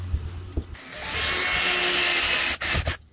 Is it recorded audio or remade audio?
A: recorded